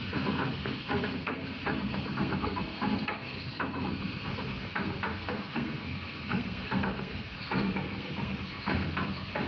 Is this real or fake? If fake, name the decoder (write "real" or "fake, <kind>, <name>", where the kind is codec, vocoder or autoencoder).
fake, codec, SNAC